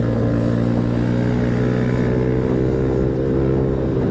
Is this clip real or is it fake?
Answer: real